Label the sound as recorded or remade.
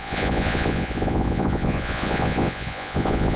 remade